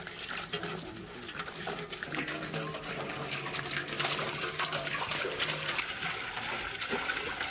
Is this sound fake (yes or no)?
no